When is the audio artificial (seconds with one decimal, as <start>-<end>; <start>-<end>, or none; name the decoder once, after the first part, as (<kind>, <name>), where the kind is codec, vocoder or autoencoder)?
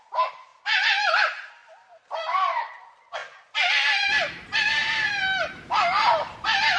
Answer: none